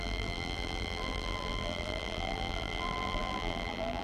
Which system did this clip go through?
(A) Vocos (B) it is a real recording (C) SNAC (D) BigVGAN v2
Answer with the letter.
D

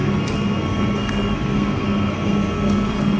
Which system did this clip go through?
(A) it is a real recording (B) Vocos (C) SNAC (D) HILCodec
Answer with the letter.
C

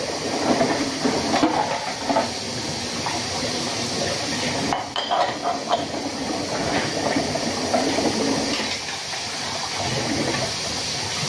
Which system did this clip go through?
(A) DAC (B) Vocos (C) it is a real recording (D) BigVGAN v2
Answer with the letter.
C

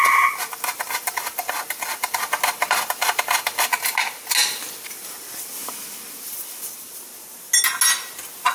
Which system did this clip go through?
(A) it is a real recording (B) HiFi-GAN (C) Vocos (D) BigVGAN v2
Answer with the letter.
A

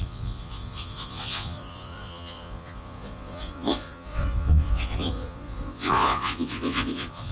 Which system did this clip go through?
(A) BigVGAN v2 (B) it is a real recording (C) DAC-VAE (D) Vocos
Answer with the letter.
D